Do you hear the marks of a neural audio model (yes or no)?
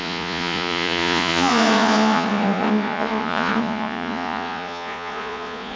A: yes